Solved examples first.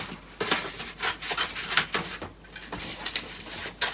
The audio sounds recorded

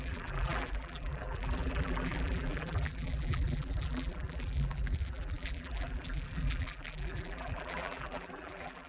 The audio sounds remade